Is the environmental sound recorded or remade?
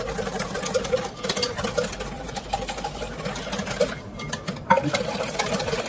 recorded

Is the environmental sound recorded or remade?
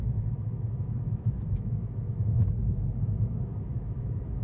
remade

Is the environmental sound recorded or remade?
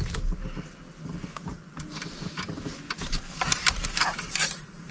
recorded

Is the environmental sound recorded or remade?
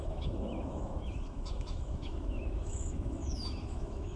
remade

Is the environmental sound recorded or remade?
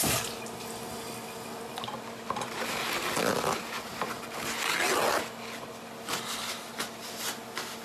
recorded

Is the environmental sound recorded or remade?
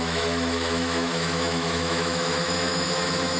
remade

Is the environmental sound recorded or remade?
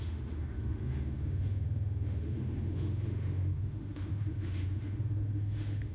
remade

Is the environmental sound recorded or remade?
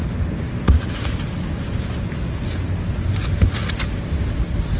recorded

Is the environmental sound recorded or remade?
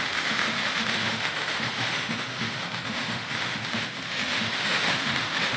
remade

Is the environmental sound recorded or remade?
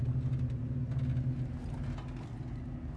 recorded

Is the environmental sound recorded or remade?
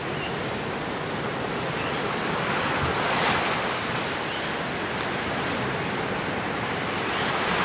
recorded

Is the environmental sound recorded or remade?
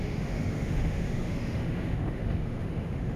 remade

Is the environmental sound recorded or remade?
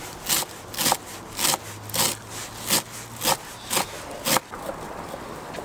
recorded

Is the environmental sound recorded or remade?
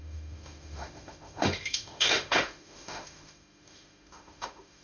remade